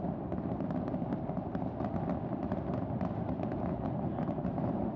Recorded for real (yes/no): no